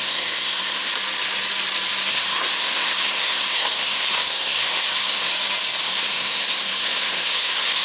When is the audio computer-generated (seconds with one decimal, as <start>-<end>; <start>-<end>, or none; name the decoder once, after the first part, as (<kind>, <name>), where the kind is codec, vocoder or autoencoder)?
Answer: 0.0-0.9 (codec, SNAC); 2.1-5.3; 5.8-7.8